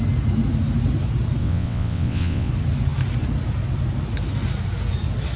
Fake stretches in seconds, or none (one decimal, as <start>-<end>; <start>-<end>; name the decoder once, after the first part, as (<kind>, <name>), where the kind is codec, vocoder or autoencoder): 1.4-2.5 (vocoder, WaveNeXt)